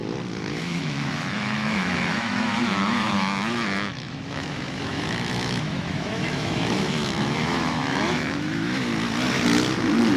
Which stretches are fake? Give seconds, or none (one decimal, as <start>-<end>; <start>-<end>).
0.5-8.9